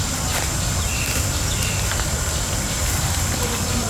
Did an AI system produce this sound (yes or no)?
no